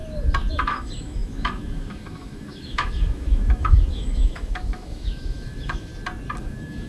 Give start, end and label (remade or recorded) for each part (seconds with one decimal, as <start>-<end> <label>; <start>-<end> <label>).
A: 0.0-0.5 recorded; 0.5-5.9 remade; 5.9-6.4 recorded; 6.4-6.9 remade